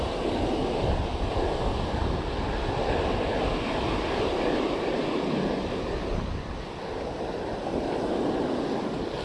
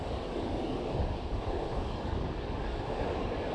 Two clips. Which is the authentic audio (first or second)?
first